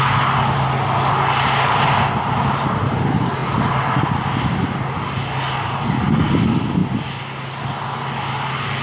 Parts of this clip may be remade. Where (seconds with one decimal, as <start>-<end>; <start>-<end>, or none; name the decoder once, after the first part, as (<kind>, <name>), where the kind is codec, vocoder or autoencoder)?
none